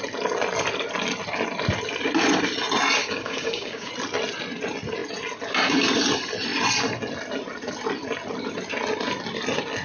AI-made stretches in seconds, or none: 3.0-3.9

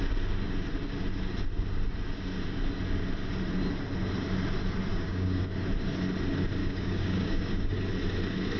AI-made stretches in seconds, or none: 4.9-5.4; 6.6-7.8

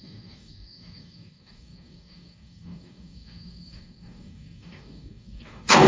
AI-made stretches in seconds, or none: 0.0-5.9

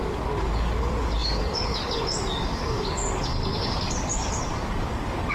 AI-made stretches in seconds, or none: 0.0-5.3